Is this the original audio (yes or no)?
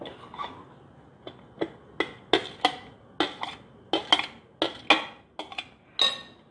yes